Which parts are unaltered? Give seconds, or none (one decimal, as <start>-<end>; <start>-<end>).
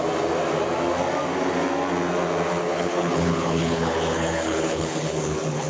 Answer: 0.0-2.6